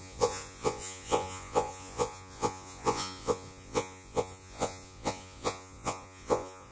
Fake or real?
fake